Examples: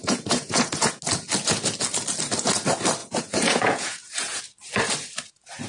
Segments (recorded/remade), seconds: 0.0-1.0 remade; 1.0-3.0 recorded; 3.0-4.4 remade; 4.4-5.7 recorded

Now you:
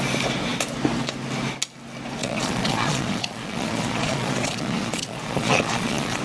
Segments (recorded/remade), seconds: 0.0-2.2 recorded; 2.2-6.2 remade

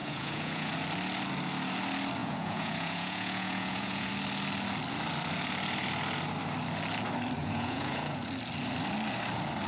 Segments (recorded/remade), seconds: 0.0-0.7 remade; 0.7-2.2 recorded; 2.2-4.1 remade; 4.1-7.4 recorded; 7.4-8.3 remade; 8.3-9.7 recorded

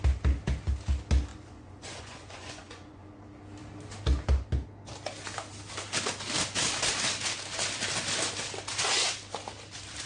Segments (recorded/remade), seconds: 0.0-1.3 recorded; 1.3-3.2 remade; 3.2-10.1 recorded

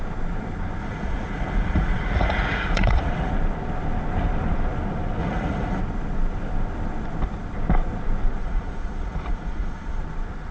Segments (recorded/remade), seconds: 0.0-0.8 recorded; 0.8-3.3 remade; 3.3-5.2 recorded; 5.2-5.8 remade; 5.8-8.4 recorded; 8.4-10.0 remade; 10.0-10.5 recorded

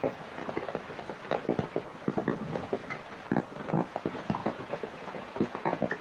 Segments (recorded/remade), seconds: 0.0-0.4 remade; 0.4-2.4 recorded; 2.4-2.8 remade; 2.8-3.4 recorded; 3.4-6.0 remade

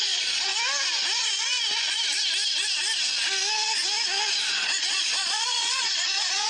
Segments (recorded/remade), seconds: 0.0-0.5 remade; 0.5-4.4 recorded; 4.4-6.5 remade

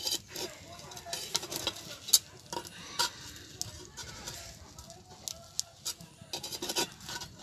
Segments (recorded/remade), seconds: 0.0-7.4 recorded